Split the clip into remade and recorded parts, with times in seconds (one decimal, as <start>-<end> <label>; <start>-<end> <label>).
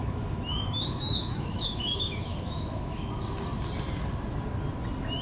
0.0-3.1 remade; 3.1-5.2 recorded